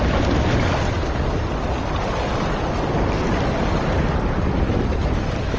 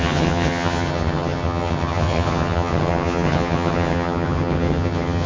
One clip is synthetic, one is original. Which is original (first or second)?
first